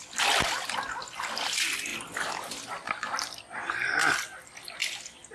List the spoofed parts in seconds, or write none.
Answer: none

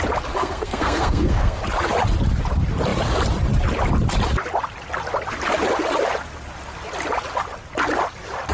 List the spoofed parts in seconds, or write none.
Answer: 0.4-1.6 (codec, SNAC)

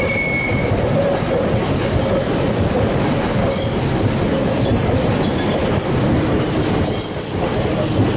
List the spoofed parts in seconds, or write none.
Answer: 4.4-5.1 (vocoder, BigVGAN v2)

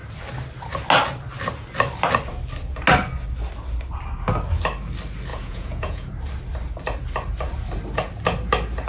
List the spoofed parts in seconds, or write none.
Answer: 5.3-6.1 (vocoder, Vocos)